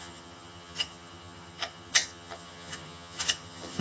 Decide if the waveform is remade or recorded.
remade